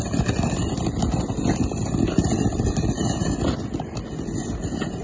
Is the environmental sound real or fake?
real